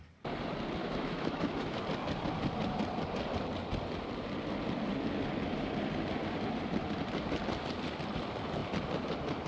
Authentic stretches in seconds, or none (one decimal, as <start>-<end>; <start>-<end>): 0.0-0.8; 1.8-9.5